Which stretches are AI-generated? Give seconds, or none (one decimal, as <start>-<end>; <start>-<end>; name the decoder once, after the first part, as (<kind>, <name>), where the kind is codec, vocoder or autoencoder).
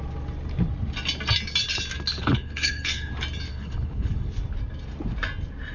2.1-3.1 (codec, HILCodec); 3.5-4.3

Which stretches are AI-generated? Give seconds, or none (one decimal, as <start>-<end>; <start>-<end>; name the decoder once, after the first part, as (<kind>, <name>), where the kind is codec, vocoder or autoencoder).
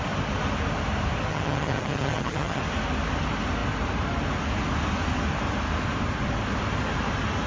1.3-2.6 (vocoder, HiFi-GAN)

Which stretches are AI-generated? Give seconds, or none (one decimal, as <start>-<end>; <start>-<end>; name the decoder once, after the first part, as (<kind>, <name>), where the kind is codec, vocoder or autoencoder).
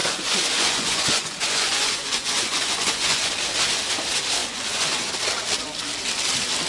0.0-3.3 (vocoder, Vocos); 4.4-5.1